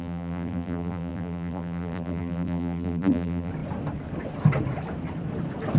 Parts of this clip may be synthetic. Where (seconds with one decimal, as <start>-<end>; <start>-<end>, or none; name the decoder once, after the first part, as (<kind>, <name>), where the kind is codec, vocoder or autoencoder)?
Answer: 0.0-3.5 (vocoder, BigVGAN v2)